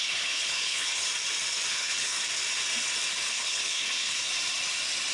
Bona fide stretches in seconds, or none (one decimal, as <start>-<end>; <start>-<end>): 1.1-1.7; 2.2-3.3; 4.2-5.1